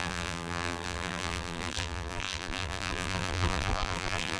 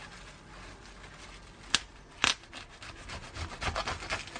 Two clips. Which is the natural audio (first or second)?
second